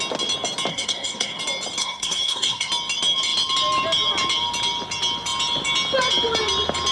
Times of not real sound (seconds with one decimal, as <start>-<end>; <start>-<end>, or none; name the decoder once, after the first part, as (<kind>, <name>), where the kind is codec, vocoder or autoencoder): 0.7-1.4 (codec, SNAC); 1.8-2.7